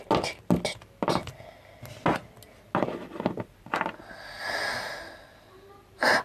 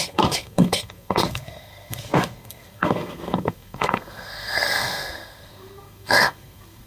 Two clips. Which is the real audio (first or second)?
first